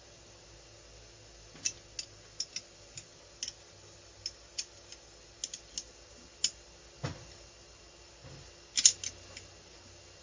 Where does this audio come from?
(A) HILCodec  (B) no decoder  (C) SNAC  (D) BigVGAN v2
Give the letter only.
B